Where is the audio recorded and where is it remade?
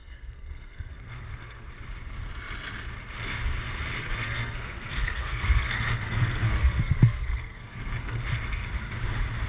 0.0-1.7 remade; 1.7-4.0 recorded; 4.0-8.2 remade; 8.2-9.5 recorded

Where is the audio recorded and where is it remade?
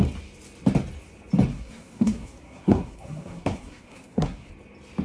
0.0-1.5 recorded; 1.5-4.5 remade; 4.5-5.0 recorded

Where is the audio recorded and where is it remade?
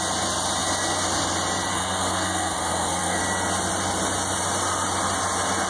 0.0-1.7 recorded; 1.7-3.2 remade; 3.2-5.7 recorded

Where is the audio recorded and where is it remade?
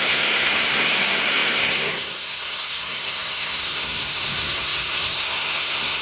0.0-6.0 remade